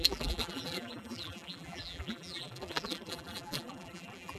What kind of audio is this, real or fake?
fake